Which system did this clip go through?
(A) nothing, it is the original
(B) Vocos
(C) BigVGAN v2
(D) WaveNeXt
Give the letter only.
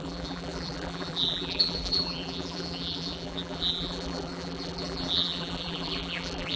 C